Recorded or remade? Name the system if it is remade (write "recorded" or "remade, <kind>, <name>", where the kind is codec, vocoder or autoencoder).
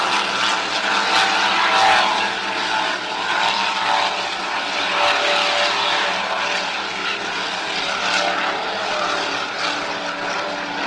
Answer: recorded